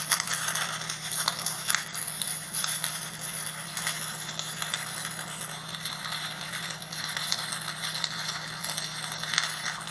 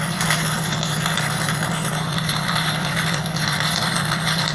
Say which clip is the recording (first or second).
first